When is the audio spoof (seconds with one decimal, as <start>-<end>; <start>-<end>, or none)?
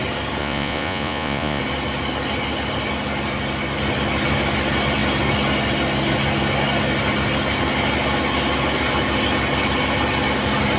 0.4-1.6